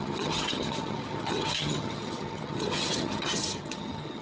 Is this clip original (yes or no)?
no